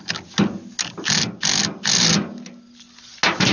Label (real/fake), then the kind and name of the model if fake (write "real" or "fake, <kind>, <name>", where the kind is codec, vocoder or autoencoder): real